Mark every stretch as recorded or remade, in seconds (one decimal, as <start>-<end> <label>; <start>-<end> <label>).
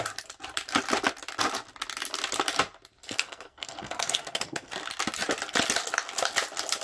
0.0-3.0 recorded; 3.0-4.7 remade; 4.7-6.8 recorded